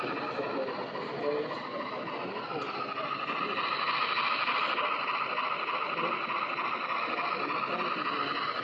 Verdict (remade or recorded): recorded